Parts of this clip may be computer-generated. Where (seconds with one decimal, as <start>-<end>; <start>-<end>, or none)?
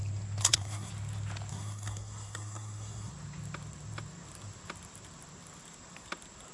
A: 0.4-0.9; 1.5-3.1